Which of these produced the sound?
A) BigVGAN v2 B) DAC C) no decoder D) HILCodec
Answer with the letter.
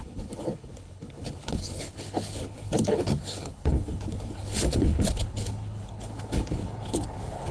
D